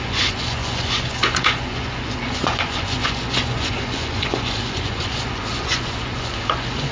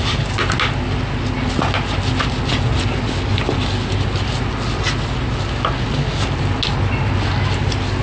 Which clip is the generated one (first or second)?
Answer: first